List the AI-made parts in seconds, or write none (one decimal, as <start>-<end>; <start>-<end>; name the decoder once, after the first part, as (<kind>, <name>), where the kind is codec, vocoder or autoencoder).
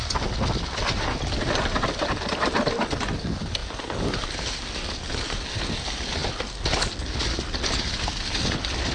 none